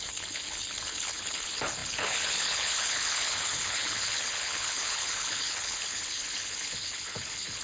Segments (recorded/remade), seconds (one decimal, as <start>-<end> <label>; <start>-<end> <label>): 0.0-7.6 remade